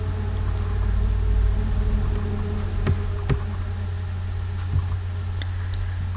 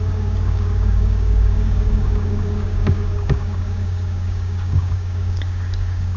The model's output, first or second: second